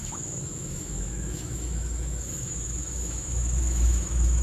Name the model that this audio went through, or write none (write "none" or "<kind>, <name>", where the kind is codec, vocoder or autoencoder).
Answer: autoencoder, DAC-VAE